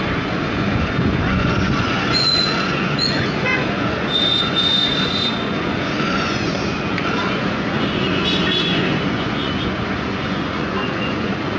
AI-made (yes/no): yes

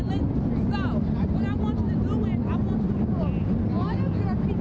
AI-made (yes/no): no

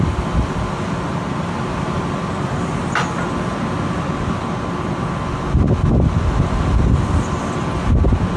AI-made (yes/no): no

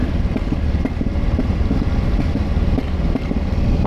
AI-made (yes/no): no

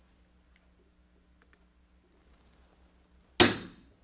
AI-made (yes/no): no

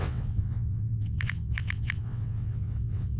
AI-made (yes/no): yes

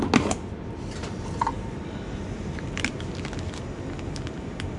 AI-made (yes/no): no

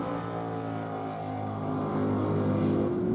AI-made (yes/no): no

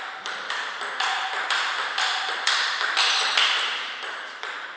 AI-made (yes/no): no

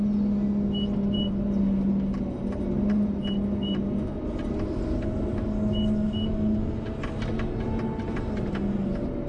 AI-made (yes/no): no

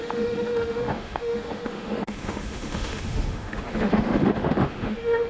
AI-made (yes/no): yes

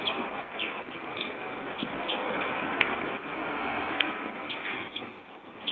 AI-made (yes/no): yes